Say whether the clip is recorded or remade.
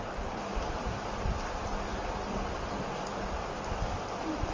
recorded